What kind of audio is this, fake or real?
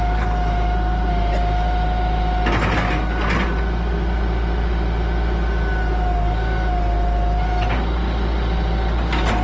real